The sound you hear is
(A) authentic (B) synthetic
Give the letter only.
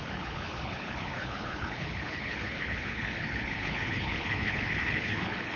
B